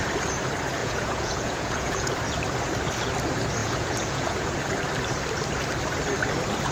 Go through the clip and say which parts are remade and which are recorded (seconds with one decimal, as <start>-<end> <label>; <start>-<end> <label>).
0.0-0.8 recorded; 0.8-2.1 remade; 2.1-3.6 recorded; 3.6-4.6 remade; 4.6-6.7 recorded